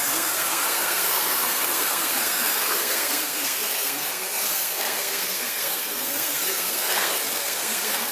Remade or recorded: remade